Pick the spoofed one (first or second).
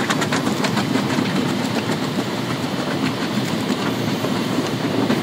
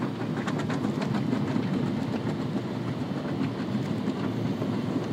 first